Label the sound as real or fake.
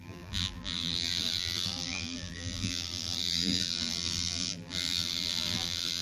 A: fake